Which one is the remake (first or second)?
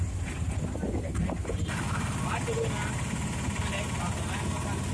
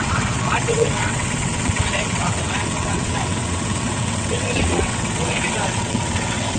second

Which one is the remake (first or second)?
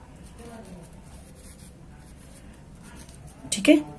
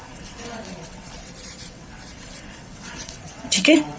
second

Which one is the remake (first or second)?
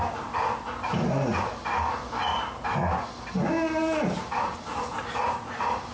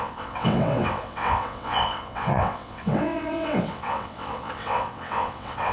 second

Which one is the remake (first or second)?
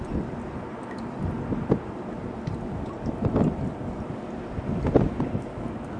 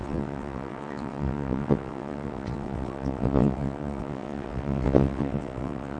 second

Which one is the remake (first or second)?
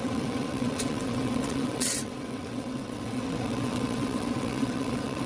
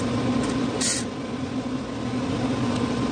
first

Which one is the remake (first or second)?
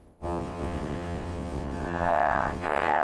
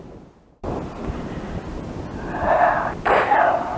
first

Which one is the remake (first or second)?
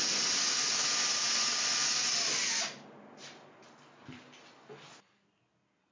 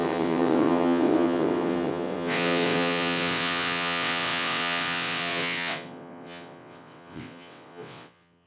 second